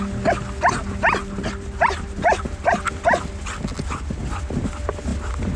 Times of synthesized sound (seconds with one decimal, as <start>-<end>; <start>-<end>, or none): none